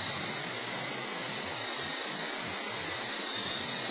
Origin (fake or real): real